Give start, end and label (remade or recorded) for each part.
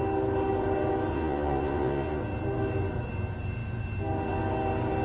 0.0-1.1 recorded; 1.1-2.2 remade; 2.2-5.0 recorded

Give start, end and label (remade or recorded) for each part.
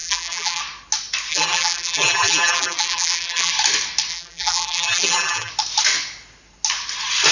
0.0-0.6 remade; 0.6-1.3 recorded; 1.3-3.5 remade; 3.5-4.1 recorded; 4.1-5.5 remade; 5.5-7.3 recorded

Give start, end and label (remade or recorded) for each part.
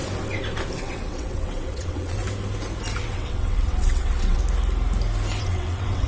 0.0-0.8 recorded; 0.8-2.2 remade; 2.2-3.0 recorded; 3.0-4.4 remade; 4.4-5.4 recorded; 5.4-6.1 remade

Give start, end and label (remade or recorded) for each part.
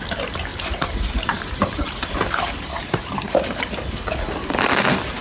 0.0-0.5 recorded; 0.5-3.6 remade; 3.6-5.2 recorded